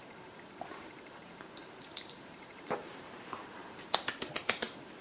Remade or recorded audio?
remade